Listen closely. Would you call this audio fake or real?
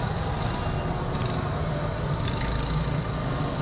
real